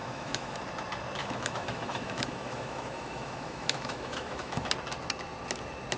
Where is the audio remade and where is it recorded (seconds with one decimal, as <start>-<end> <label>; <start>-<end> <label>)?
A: 0.0-0.6 remade; 0.6-1.2 recorded; 1.2-4.7 remade; 4.7-6.0 recorded